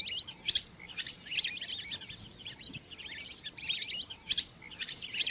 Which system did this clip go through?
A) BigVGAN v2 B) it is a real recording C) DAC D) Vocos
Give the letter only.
B